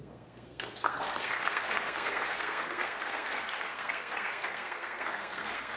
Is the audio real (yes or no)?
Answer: no